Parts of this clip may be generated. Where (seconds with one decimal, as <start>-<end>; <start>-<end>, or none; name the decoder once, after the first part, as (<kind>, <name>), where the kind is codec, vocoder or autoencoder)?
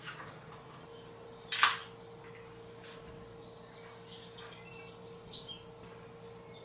none